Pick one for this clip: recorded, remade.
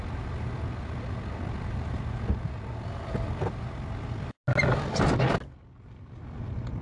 recorded